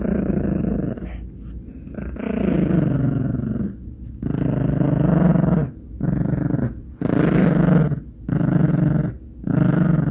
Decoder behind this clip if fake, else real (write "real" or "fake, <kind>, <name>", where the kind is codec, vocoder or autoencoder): real